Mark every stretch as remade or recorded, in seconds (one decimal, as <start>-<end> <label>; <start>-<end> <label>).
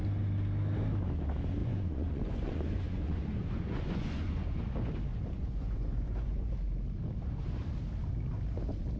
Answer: 0.0-1.6 recorded; 1.6-4.6 remade; 4.6-5.1 recorded; 5.1-6.5 remade; 6.5-9.0 recorded